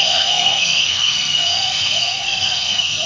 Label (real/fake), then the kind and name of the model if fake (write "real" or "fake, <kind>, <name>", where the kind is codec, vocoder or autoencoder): fake, codec, SNAC